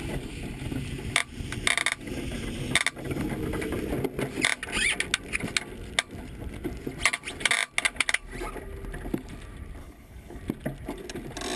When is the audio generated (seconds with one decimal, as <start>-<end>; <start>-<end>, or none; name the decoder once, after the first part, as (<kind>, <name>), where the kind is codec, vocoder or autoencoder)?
9.8-10.4 (codec, HILCodec)

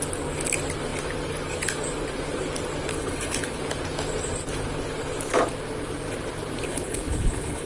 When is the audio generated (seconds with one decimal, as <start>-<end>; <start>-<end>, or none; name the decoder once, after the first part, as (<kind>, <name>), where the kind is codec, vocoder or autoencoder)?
2.9-3.6 (codec, HILCodec); 6.7-7.7